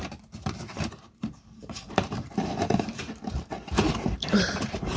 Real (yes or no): no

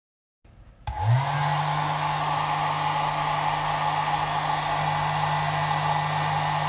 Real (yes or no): yes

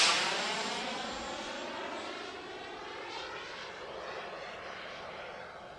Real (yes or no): yes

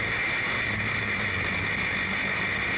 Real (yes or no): yes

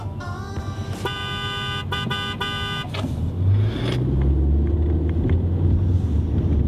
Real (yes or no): yes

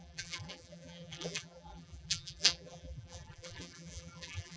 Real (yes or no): no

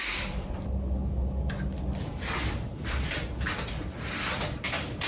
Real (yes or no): yes